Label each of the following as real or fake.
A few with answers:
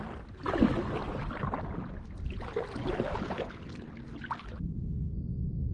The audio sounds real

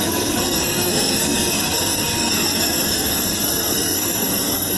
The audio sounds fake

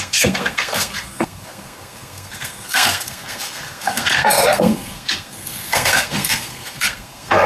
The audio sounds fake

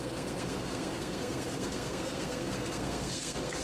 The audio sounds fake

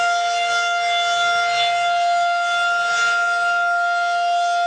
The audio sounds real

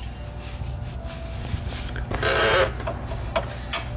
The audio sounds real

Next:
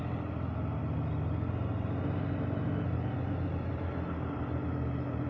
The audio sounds real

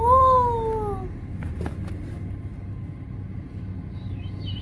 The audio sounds real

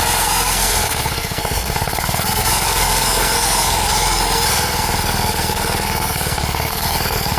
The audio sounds fake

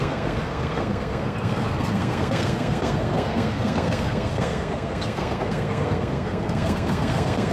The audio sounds fake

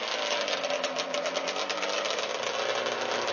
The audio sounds real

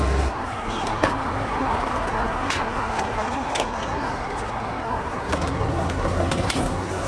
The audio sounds fake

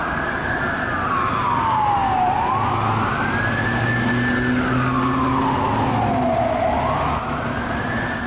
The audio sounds real